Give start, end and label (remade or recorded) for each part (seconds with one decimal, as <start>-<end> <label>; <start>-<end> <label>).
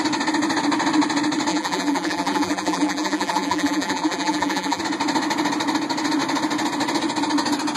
0.0-1.5 recorded; 1.5-4.8 remade; 4.8-7.8 recorded